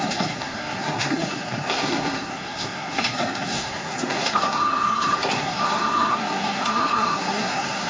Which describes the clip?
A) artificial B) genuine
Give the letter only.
A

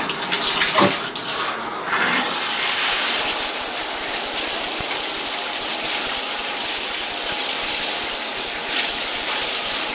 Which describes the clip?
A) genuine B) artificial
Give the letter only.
A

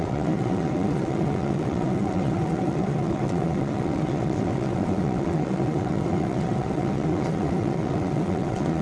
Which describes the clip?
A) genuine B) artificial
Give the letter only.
B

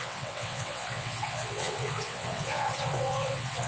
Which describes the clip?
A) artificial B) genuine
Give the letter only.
A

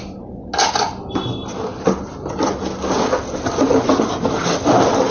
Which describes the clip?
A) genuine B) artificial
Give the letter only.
A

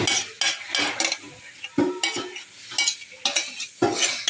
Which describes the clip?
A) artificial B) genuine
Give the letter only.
B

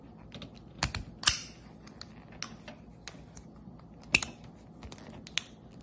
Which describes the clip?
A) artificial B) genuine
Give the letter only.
B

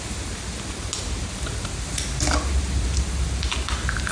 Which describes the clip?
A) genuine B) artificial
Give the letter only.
A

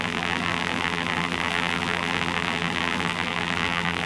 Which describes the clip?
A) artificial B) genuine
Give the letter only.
A